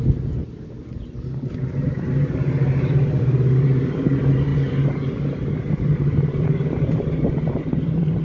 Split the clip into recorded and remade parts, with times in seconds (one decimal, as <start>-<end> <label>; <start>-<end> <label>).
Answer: 0.0-0.4 remade; 0.4-1.7 recorded; 1.7-8.2 remade